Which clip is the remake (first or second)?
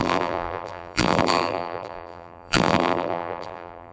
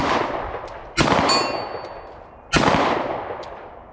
first